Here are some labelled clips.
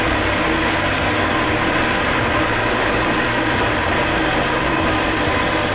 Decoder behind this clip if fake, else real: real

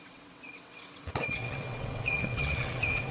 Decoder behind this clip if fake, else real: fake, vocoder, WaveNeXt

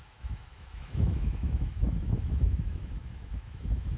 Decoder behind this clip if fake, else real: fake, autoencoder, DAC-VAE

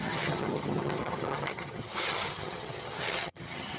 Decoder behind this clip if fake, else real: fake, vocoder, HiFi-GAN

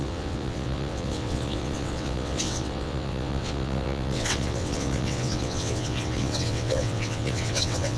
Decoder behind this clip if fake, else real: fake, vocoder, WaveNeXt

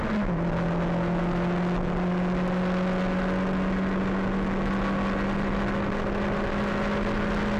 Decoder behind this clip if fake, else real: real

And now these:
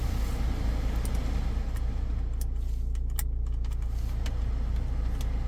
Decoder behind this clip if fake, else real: real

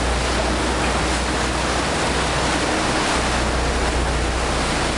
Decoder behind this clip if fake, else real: real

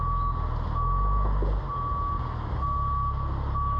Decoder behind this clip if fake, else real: real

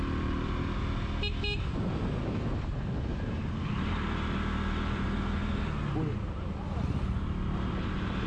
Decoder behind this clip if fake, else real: real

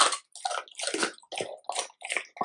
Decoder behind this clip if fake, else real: real